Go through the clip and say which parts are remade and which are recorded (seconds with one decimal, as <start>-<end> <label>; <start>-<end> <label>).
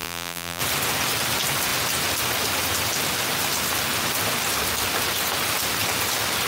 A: 0.0-0.6 remade; 0.6-6.5 recorded